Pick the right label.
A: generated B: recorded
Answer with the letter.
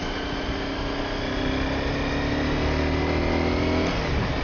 B